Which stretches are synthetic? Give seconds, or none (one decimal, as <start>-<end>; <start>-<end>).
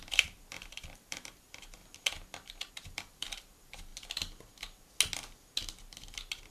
0.0-1.8; 2.7-3.9